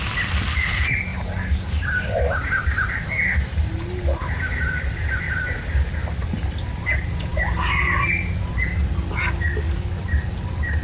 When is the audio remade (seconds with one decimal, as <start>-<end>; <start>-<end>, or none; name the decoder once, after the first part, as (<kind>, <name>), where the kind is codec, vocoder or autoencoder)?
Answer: 9.2-10.0 (codec, DAC)